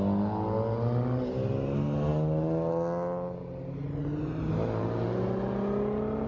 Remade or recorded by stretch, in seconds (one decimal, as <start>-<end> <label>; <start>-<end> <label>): 0.0-6.3 recorded